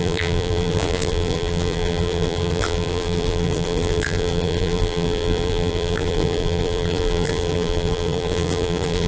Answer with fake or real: fake